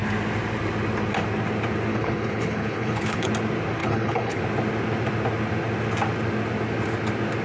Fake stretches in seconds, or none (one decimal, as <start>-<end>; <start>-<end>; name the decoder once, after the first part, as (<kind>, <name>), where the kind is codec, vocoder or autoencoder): 1.9-3.3 (codec, HILCodec); 3.8-4.4